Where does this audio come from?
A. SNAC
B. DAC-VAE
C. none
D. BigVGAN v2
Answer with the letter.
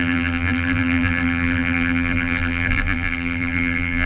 D